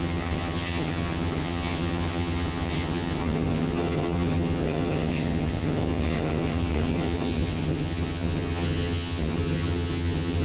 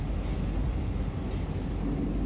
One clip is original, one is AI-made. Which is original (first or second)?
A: second